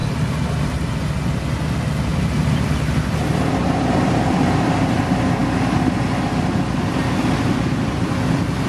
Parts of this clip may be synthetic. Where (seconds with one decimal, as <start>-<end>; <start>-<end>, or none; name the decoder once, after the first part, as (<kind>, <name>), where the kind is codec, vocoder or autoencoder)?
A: 0.0-0.9 (vocoder, BigVGAN v2); 2.1-4.8